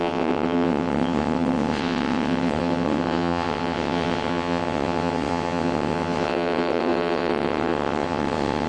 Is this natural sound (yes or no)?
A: no